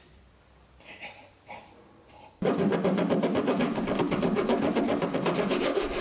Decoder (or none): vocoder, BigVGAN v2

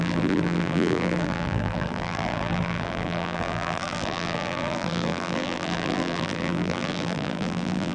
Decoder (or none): vocoder, BigVGAN v2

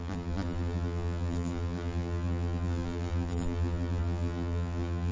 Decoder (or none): vocoder, BigVGAN v2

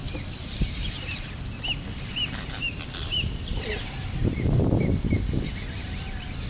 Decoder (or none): vocoder, BigVGAN v2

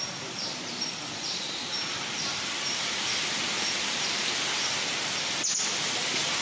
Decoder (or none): vocoder, BigVGAN v2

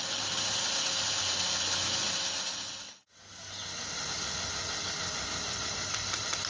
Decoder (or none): none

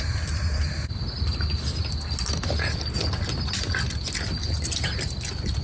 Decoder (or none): none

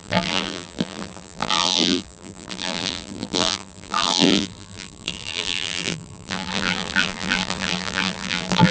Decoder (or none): vocoder, BigVGAN v2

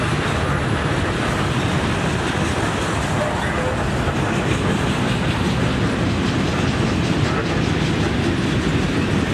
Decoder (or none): none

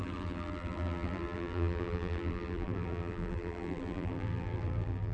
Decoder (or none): vocoder, BigVGAN v2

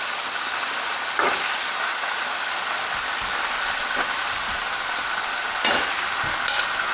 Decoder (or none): none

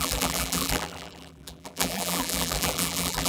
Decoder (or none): vocoder, BigVGAN v2